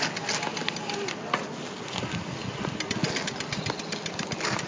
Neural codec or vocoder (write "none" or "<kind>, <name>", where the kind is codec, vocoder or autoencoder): none